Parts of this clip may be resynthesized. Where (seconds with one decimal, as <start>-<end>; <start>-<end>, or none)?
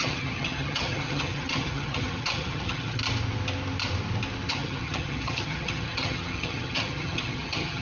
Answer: 0.0-3.0; 4.5-7.8